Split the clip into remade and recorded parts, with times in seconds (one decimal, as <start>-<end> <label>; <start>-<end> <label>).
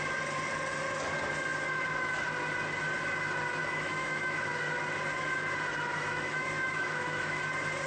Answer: 0.0-3.6 recorded; 3.6-4.5 remade; 4.5-5.9 recorded; 5.9-7.4 remade; 7.4-7.9 recorded